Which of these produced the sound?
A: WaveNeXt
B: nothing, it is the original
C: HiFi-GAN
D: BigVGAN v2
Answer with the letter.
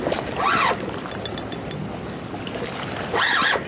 B